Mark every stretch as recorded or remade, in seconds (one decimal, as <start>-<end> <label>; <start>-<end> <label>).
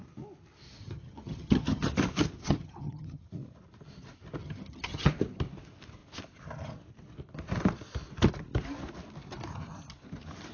0.0-0.8 recorded; 0.8-1.9 remade; 1.9-2.4 recorded; 2.4-3.3 remade; 3.3-4.4 recorded; 4.4-5.1 remade; 5.1-10.5 recorded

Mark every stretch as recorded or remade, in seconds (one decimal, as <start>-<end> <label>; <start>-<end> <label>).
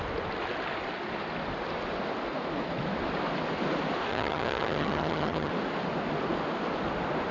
0.0-4.1 recorded; 4.1-5.5 remade; 5.5-7.3 recorded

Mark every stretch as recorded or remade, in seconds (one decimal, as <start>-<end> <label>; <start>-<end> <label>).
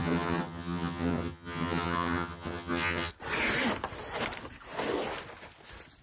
0.0-3.1 remade; 3.1-6.0 recorded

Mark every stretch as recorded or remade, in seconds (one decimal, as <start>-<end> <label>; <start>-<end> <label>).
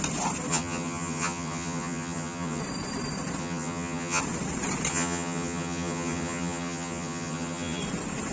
0.0-0.5 recorded; 0.5-2.6 remade; 2.6-3.4 recorded; 3.4-4.2 remade; 4.2-4.9 recorded; 4.9-7.8 remade; 7.8-8.3 recorded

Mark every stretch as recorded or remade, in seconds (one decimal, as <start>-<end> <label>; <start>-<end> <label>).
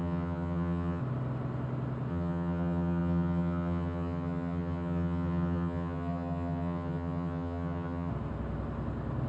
0.0-1.0 remade; 1.0-2.1 recorded; 2.1-8.1 remade; 8.1-9.3 recorded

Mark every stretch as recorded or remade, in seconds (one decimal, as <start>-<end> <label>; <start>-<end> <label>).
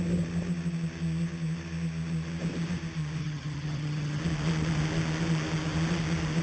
0.0-3.2 recorded; 3.2-4.2 remade; 4.2-6.4 recorded